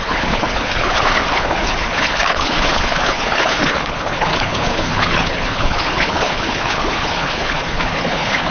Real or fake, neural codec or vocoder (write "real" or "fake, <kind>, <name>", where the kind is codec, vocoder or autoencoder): fake, codec, HILCodec